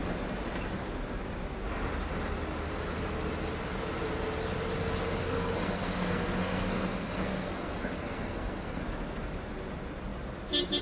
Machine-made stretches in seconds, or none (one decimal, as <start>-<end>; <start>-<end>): 5.2-8.8